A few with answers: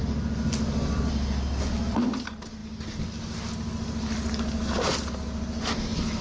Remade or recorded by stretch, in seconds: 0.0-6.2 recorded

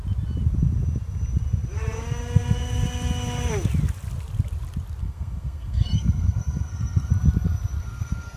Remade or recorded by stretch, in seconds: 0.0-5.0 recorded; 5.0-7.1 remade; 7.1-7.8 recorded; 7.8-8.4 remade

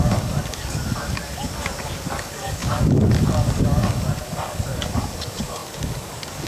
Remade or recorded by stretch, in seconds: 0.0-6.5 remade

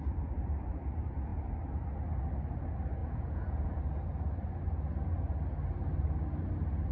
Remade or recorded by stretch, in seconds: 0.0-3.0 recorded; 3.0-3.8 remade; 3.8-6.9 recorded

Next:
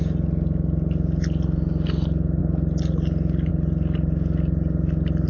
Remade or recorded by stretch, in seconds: 0.0-5.3 recorded